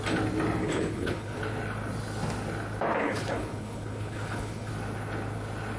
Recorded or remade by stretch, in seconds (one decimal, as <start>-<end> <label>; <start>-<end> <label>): 0.0-0.6 recorded; 0.6-1.4 remade; 1.4-3.0 recorded; 3.0-4.7 remade; 4.7-5.8 recorded